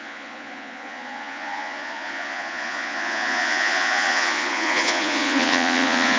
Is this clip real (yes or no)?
no